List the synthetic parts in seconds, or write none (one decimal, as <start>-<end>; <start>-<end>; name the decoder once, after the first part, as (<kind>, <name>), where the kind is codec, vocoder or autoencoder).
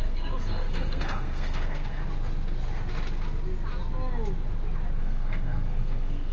0.0-2.0 (codec, SNAC); 5.0-6.3